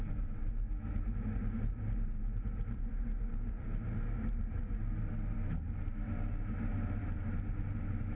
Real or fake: fake